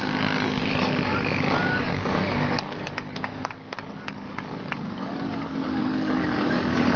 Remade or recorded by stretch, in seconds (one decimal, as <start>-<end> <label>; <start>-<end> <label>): 0.0-7.0 remade